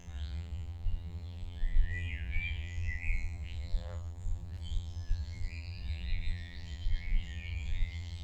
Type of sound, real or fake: fake